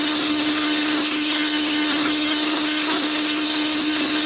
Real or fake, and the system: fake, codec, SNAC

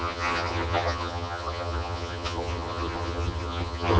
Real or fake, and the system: fake, vocoder, HiFi-GAN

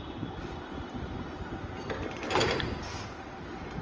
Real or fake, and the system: real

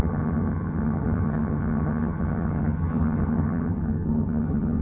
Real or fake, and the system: fake, vocoder, HiFi-GAN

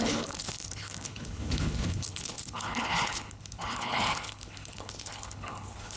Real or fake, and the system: fake, codec, HILCodec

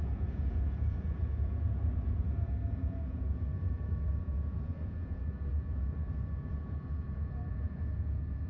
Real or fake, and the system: fake, vocoder, Vocos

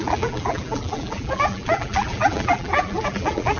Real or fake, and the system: fake, vocoder, BigVGAN v2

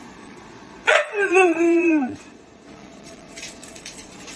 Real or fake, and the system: fake, vocoder, Vocos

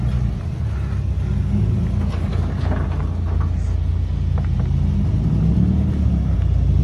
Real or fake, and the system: real